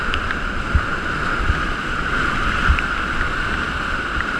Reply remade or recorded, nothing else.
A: recorded